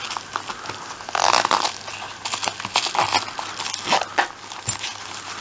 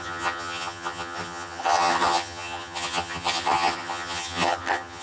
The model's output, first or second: second